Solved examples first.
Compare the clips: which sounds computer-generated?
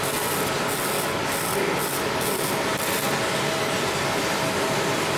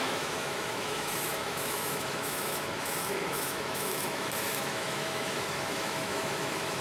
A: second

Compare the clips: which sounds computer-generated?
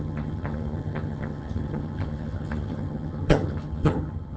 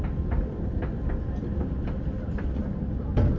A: first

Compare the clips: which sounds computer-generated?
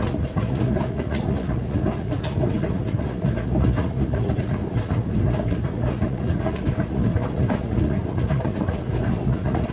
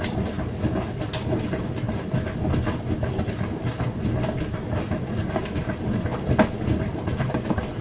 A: first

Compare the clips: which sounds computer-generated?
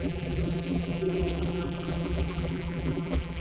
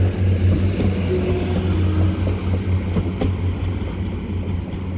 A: first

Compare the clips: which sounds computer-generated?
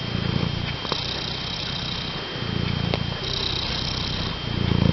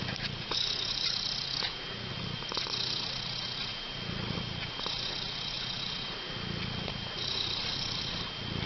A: second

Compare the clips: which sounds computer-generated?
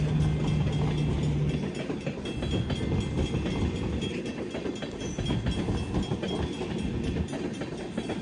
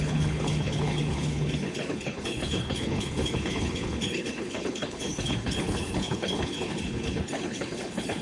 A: second